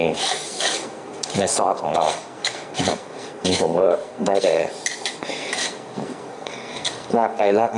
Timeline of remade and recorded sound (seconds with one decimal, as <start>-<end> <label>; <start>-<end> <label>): 0.0-4.6 remade; 4.6-5.2 recorded; 5.2-7.8 remade